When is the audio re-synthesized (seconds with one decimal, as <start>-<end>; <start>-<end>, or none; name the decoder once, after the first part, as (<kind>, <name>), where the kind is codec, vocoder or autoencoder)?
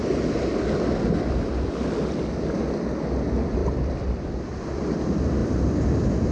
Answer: 3.6-4.2 (vocoder, BigVGAN v2); 5.4-6.3